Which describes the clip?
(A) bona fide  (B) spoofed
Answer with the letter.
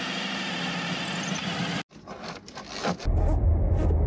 A